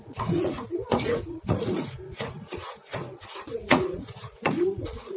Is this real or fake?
fake